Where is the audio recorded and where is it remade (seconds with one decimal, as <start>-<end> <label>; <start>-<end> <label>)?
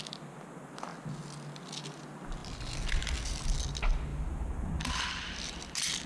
0.0-4.1 recorded; 4.1-4.7 remade; 4.7-6.1 recorded